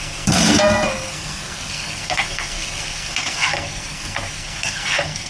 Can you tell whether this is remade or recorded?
remade